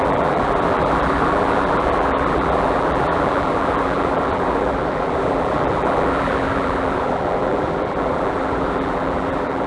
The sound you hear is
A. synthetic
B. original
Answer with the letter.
A